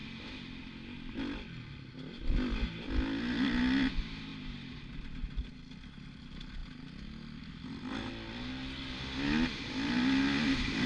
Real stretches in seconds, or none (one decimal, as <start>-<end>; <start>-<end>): 0.0-10.9